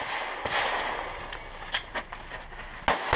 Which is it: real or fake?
real